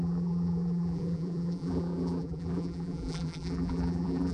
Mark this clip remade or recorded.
remade